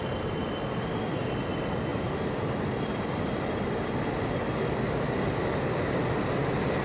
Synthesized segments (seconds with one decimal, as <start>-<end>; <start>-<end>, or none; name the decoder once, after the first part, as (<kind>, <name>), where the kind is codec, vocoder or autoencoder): none